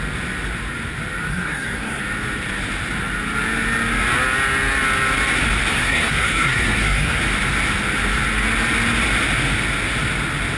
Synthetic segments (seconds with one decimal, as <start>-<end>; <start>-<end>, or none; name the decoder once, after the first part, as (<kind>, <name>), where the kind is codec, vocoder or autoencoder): 1.3-2.0 (codec, SNAC); 5.7-7.2